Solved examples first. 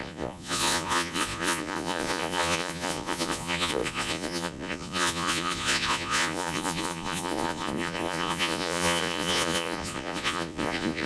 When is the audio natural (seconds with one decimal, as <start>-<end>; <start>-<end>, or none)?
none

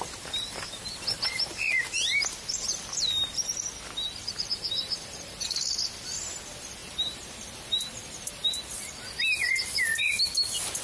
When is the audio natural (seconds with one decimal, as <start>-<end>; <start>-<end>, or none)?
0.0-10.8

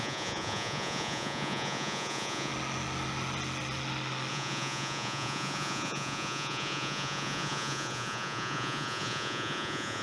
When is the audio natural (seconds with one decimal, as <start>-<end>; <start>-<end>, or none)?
2.5-4.3